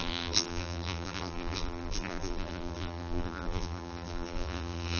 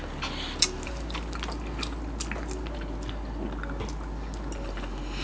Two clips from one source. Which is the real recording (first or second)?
second